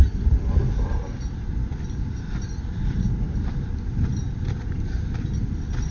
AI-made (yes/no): yes